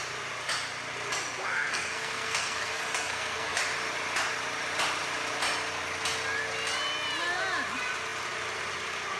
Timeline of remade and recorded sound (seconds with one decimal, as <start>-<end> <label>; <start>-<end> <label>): 0.0-1.4 recorded; 1.4-3.6 remade; 3.6-9.2 recorded